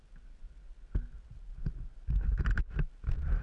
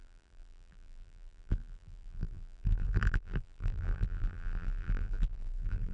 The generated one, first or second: second